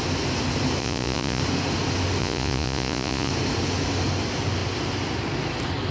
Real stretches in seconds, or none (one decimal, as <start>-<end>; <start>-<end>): 0.0-0.8; 1.4-2.2; 3.3-5.9

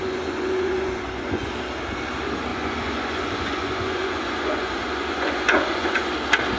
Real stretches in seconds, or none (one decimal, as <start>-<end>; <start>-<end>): 1.5-2.5; 6.1-6.6